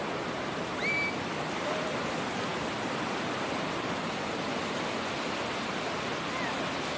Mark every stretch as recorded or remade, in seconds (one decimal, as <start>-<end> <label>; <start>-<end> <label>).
0.0-7.0 recorded